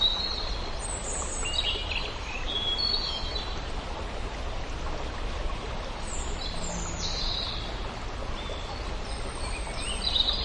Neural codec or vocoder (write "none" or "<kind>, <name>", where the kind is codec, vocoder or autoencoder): none